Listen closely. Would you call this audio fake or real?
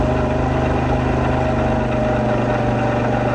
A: real